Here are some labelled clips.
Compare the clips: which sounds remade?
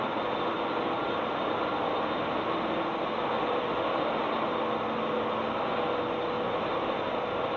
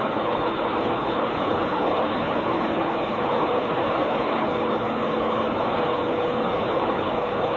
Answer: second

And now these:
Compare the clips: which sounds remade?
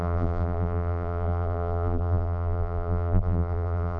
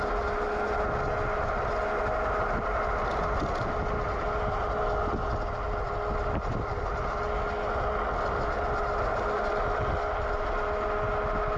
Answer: first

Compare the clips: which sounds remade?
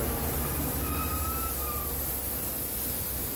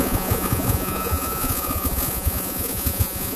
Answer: second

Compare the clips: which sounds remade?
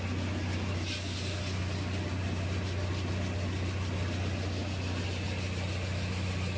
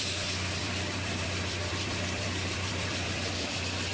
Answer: second